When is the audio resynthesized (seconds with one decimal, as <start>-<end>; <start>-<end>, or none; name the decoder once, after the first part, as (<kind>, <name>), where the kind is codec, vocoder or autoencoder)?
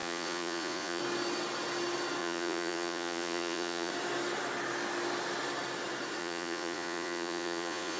0.0-1.0 (vocoder, Vocos); 2.2-3.9; 6.2-8.0